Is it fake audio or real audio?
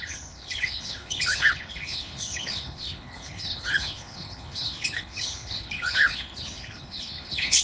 fake